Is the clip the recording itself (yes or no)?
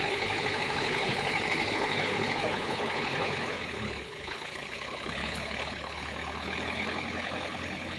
no